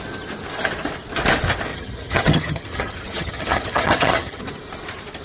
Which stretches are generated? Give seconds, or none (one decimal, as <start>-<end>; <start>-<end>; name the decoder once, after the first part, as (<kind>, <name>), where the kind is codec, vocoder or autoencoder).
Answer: 1.7-4.4 (vocoder, HiFi-GAN)